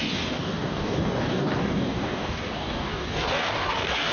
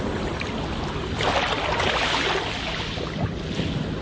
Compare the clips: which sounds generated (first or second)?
first